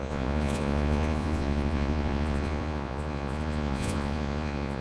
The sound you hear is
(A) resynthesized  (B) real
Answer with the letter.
A